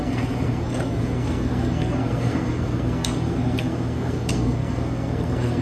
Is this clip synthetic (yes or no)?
yes